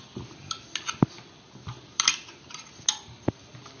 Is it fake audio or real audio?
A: real